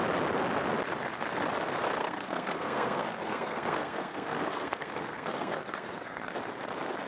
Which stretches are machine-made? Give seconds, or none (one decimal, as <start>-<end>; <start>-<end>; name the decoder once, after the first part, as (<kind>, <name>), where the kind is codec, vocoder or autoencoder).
2.0-6.3 (codec, SNAC)